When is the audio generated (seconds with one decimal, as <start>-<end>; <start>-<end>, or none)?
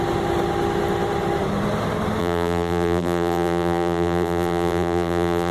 2.2-5.5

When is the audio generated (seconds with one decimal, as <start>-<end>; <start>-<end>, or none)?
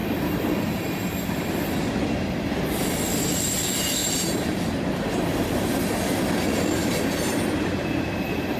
4.0-5.0; 6.8-8.0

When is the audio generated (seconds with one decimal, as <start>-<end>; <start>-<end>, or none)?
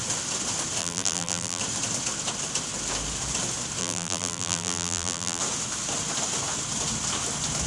0.8-1.6; 3.8-5.4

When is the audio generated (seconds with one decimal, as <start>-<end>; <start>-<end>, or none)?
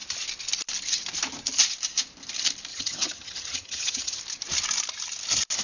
2.7-4.2